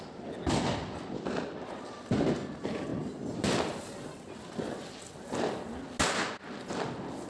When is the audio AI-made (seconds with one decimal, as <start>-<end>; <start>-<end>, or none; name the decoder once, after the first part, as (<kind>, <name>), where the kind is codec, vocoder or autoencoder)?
none